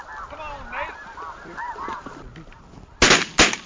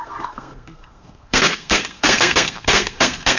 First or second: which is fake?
second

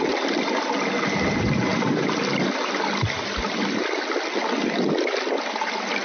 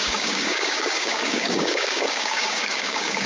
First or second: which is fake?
second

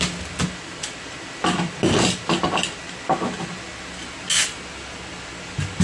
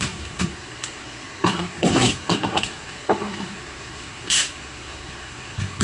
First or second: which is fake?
second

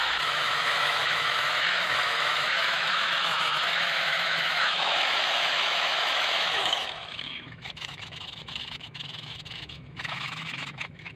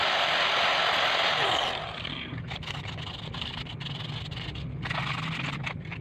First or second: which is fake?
first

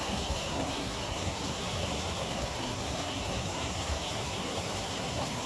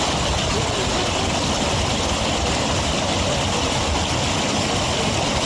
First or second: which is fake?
first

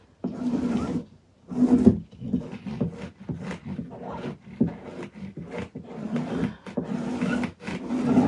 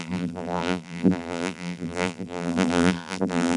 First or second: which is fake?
second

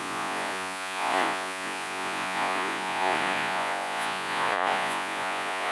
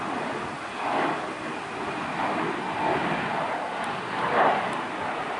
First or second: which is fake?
first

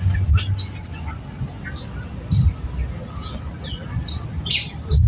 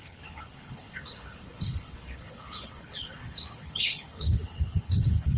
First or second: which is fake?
second